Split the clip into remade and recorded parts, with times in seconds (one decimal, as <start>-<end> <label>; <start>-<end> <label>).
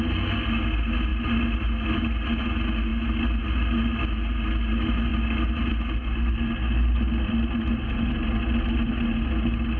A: 0.0-9.8 recorded